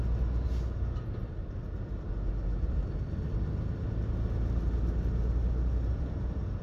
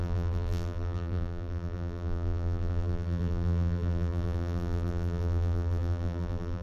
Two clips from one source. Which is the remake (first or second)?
second